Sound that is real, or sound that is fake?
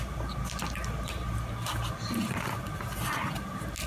real